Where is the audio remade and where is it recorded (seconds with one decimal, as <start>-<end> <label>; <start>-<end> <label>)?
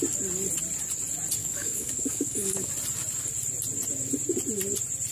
0.0-1.4 recorded; 1.4-2.7 remade; 2.7-5.1 recorded